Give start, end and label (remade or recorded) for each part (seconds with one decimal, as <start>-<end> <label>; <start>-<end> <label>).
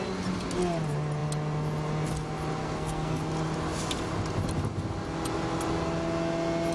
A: 0.0-2.6 recorded; 2.6-3.2 remade; 3.2-6.7 recorded